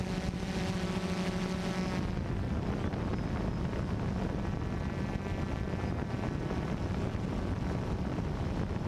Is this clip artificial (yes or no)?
no